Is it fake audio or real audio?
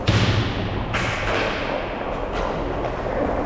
real